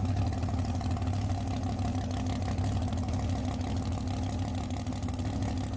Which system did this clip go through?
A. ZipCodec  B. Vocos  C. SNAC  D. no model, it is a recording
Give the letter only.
D